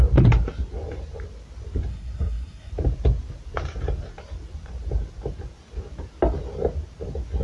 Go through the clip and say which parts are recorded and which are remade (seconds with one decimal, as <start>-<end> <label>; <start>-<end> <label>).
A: 0.0-1.9 recorded; 1.9-2.7 remade; 2.7-7.4 recorded